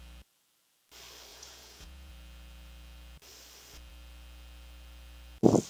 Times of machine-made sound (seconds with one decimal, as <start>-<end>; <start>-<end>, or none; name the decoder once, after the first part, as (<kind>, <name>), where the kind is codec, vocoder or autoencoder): 1.3-2.1 (vocoder, Vocos)